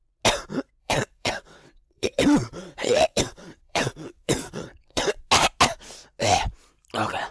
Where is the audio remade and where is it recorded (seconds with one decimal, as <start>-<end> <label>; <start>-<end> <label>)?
0.0-0.8 recorded; 0.8-5.2 remade; 5.2-7.3 recorded